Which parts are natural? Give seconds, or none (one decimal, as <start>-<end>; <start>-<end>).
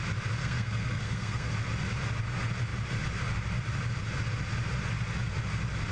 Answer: 0.0-0.4; 1.5-5.9